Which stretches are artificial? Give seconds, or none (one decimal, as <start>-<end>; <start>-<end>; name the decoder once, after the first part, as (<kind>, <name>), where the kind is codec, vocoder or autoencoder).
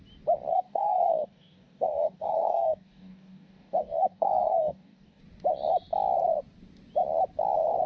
0.5-5.2 (codec, DAC)